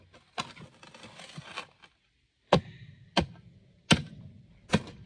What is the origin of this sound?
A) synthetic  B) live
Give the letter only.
B